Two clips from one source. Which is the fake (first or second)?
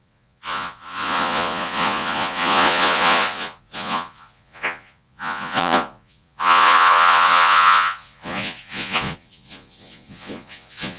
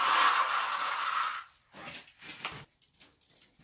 first